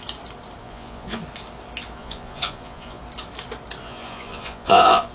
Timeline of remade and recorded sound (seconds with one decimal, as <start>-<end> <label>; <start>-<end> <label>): 0.0-0.6 recorded; 0.6-1.2 remade; 1.2-2.0 recorded; 2.0-3.0 remade; 3.0-3.8 recorded; 3.8-5.1 remade